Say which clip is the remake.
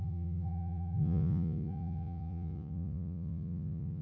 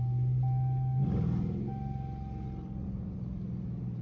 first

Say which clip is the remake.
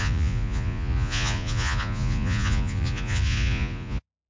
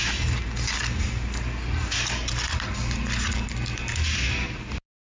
first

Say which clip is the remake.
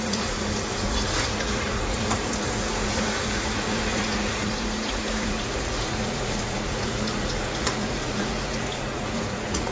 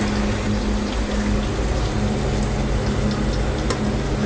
first